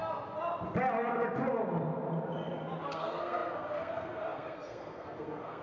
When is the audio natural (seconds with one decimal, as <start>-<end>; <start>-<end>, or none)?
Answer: 0.0-2.8